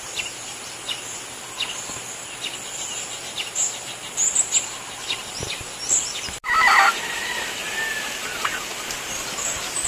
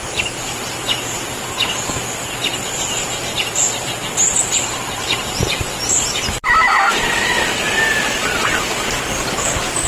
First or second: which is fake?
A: second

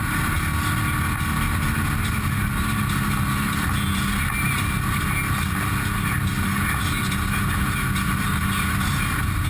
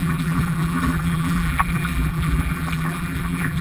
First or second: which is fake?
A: second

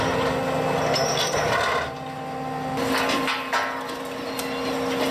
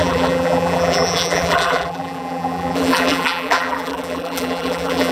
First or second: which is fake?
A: second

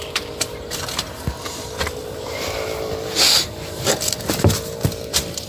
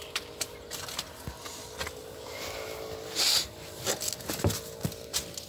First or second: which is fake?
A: first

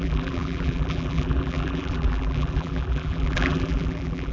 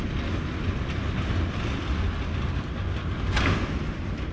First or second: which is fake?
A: first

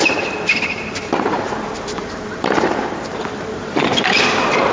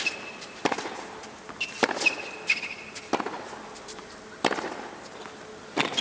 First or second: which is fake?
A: first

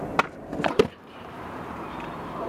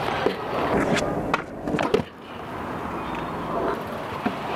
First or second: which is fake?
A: first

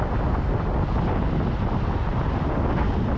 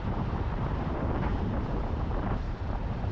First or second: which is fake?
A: second